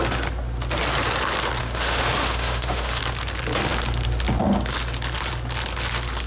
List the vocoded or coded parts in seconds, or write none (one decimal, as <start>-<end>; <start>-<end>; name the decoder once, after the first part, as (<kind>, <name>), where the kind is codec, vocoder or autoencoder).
1.6-3.0 (autoencoder, DAC-VAE)